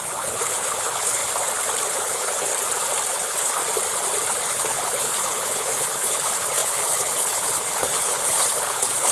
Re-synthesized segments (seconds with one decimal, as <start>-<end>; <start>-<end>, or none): 0.0-1.2; 2.0-2.5; 3.1-3.6; 4.4-9.1